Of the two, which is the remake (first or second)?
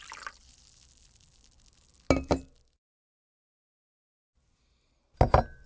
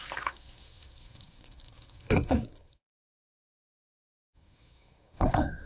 second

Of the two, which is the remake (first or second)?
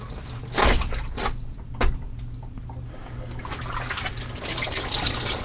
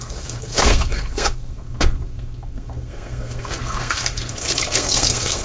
second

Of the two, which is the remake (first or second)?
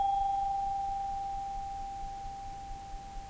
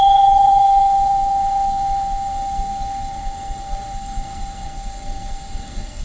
second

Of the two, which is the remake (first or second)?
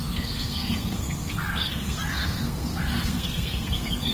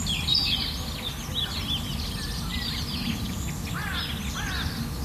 first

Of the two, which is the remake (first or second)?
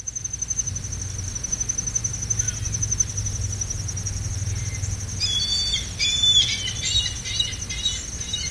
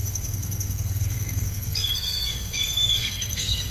second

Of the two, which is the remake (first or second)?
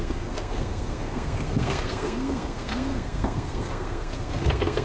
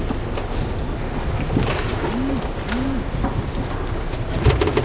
first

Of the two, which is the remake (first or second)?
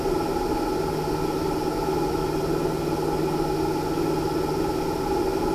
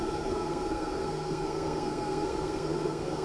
second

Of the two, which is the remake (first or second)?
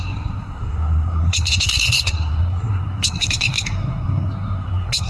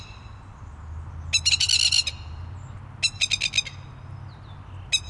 first